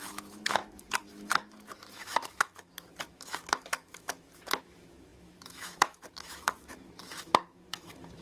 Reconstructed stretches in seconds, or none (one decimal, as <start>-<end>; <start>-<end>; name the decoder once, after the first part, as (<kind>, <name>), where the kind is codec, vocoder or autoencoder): 0.0-8.2 (autoencoder, DAC-VAE)